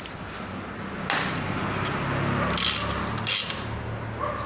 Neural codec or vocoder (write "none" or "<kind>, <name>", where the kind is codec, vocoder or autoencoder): none